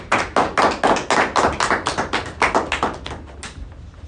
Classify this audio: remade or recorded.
recorded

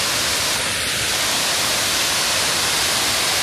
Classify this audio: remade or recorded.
recorded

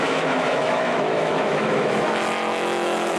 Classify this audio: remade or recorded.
remade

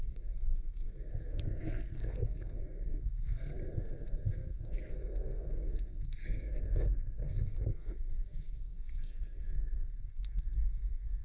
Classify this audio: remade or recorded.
remade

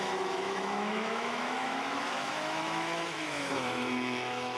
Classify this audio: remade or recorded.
remade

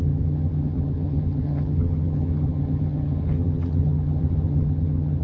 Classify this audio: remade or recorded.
remade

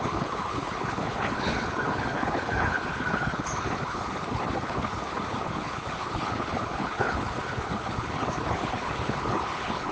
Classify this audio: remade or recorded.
remade